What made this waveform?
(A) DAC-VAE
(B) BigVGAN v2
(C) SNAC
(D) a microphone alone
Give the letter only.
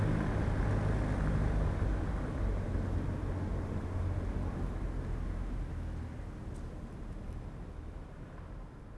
D